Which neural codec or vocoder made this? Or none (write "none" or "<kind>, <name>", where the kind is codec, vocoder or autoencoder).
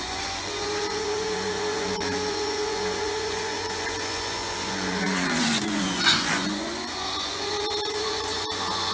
vocoder, Vocos